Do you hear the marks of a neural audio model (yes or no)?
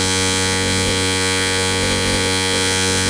yes